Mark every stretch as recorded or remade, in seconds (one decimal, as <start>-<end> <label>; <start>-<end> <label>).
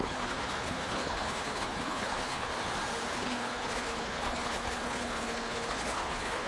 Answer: 0.0-2.5 remade; 2.5-3.1 recorded; 3.1-6.5 remade